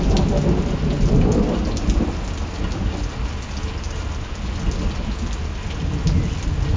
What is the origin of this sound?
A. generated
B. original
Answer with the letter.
B